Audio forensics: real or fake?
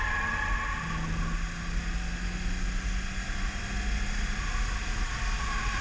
real